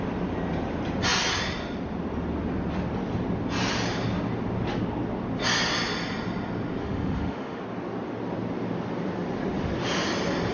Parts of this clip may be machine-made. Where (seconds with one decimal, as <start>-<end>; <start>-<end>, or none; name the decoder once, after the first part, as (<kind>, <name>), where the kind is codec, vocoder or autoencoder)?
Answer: 6.8-7.6 (autoencoder, DAC-VAE)

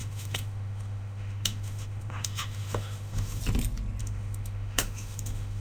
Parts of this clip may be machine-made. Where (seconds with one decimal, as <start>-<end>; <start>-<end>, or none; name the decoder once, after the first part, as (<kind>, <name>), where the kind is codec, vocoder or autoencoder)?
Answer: 0.0-3.4 (autoencoder, DAC-VAE); 4.0-5.6

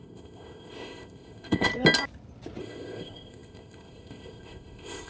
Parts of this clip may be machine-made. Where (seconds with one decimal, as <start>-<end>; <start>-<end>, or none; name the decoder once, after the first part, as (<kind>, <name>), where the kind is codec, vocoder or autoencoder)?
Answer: 0.0-1.7 (codec, ZipCodec); 2.6-5.1

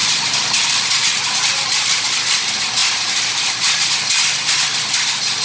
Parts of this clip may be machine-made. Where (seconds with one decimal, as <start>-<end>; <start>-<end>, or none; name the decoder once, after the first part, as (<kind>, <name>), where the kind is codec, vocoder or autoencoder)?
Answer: 0.0-2.0 (vocoder, BigVGAN v2); 2.8-3.9